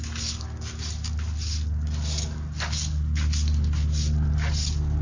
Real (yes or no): yes